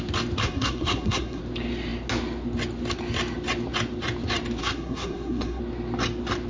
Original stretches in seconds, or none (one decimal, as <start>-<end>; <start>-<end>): 0.0-0.4; 1.4-4.6; 5.6-6.5